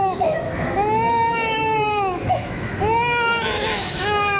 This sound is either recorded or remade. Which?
remade